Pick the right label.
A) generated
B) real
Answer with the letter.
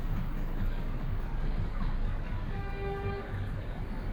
A